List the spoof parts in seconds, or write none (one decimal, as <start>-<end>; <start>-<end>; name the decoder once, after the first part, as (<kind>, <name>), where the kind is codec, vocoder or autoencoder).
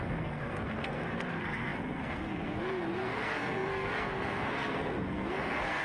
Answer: 0.0-5.8 (codec, SNAC)